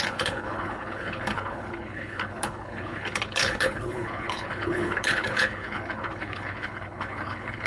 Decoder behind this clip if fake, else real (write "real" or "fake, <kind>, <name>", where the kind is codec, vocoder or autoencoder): fake, codec, HILCodec